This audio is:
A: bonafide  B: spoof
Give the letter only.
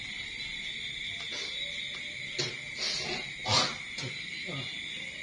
A